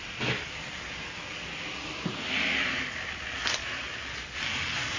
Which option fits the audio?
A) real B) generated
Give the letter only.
A